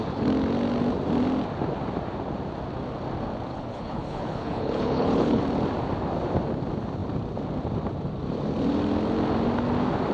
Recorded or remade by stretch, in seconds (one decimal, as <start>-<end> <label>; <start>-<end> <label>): 0.0-3.5 recorded; 3.5-5.4 remade; 5.4-10.1 recorded